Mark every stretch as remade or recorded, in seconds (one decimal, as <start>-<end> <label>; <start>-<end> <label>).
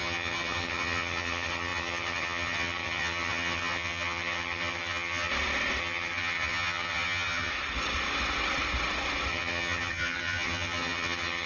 0.0-5.3 remade; 5.3-5.8 recorded; 5.8-7.5 remade; 7.5-9.3 recorded; 9.3-11.5 remade